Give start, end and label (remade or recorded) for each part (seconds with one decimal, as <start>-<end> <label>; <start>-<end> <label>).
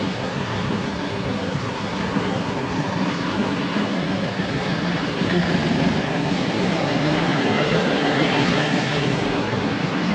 0.0-5.5 remade; 5.5-6.0 recorded; 6.0-10.1 remade